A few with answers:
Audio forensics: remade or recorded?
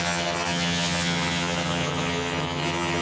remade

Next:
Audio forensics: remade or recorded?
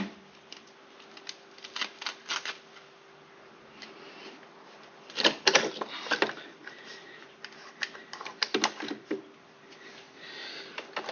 recorded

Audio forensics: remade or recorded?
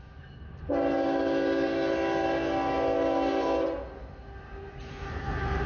recorded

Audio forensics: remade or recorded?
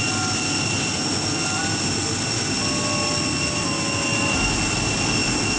recorded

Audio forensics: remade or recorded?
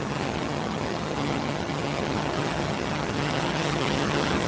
remade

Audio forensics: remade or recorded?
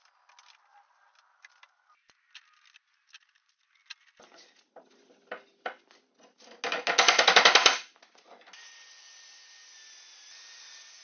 recorded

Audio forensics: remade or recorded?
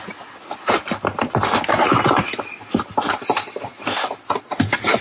recorded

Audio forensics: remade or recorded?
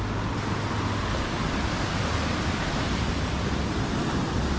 recorded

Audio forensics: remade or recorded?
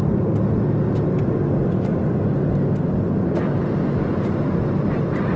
recorded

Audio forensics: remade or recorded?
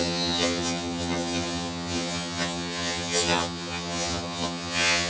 remade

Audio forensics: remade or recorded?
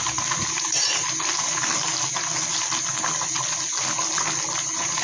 recorded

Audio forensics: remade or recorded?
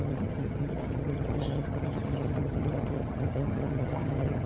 remade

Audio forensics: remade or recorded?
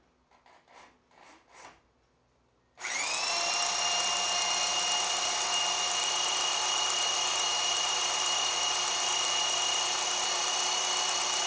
recorded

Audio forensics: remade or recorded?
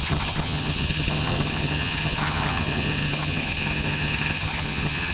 remade